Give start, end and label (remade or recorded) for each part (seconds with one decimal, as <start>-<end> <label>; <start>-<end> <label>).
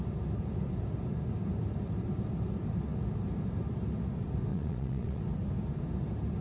0.0-4.5 recorded; 4.5-5.2 remade; 5.2-6.4 recorded